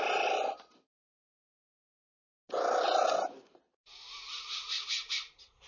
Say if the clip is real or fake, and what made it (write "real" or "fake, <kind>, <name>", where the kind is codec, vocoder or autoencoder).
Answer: real